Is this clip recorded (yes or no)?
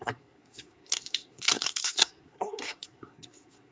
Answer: no